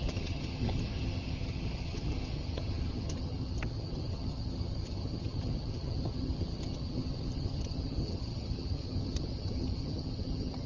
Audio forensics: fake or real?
fake